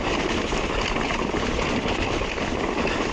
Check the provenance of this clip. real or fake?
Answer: real